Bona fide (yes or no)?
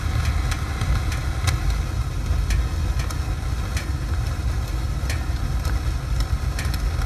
yes